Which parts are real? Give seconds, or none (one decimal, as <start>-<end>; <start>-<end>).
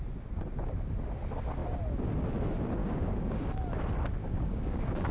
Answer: 0.0-2.8; 3.5-4.2